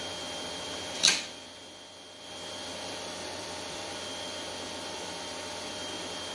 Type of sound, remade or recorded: remade